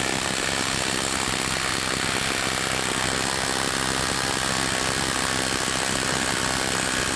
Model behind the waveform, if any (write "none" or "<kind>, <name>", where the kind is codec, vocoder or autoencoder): none